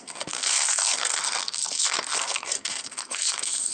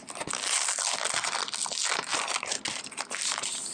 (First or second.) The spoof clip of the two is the first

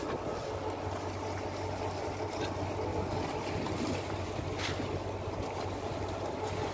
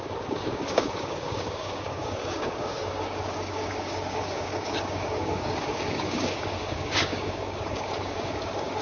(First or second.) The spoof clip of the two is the second